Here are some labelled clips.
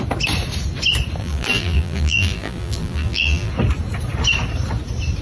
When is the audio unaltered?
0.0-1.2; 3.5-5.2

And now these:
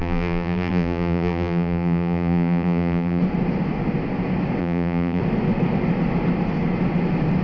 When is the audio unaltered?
3.2-4.6; 5.2-7.4

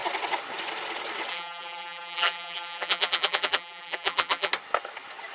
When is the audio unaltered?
0.0-1.3; 4.5-5.3

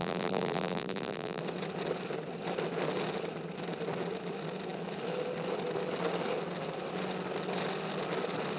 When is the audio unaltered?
1.4-8.6

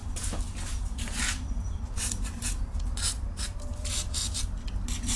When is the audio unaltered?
4.2-5.2

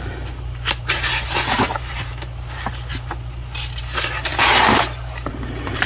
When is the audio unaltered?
4.3-5.3